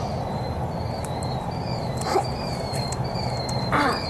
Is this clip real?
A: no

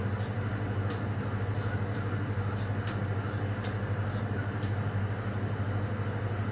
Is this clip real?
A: yes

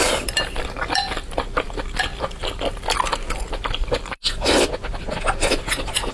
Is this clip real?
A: yes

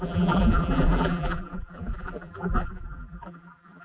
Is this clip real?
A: no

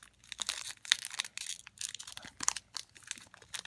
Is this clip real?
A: yes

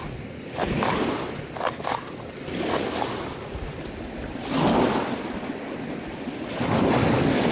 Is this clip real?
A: yes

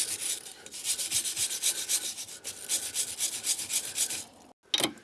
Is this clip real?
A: yes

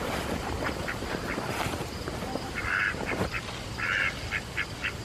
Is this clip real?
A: yes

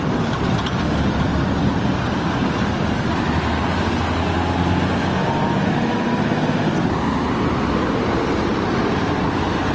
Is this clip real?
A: yes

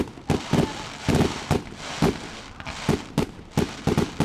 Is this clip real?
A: yes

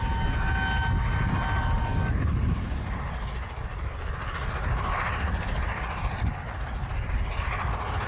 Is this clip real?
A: yes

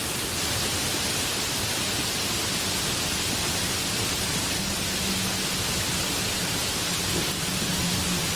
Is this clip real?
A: yes